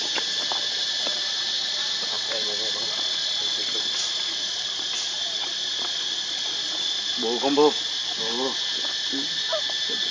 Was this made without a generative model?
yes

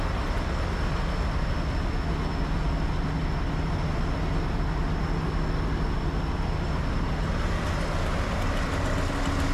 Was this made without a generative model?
yes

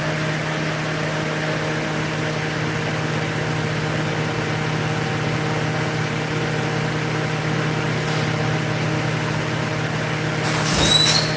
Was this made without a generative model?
yes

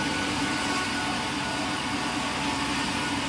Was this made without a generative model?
yes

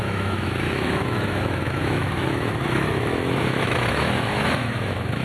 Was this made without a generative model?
no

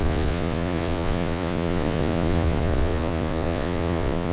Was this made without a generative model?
no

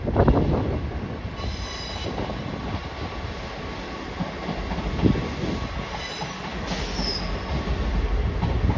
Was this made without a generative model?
yes